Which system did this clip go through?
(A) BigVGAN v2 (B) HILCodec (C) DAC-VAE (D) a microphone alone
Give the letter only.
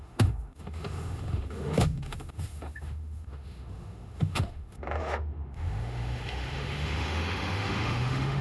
C